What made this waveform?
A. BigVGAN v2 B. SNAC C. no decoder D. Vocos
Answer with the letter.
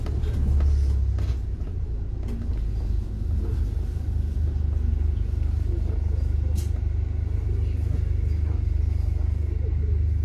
C